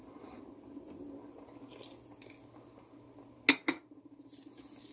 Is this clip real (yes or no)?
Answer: yes